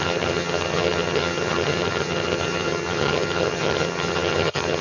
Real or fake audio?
fake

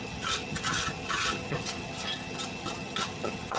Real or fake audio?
fake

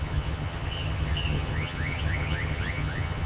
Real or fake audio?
fake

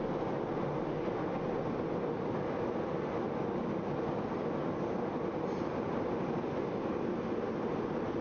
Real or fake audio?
real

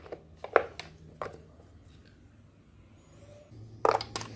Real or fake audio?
real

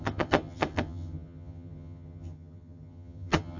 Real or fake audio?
fake